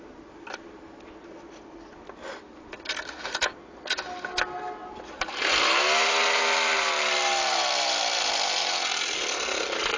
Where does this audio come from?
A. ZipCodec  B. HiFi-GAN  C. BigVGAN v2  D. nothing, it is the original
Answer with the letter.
D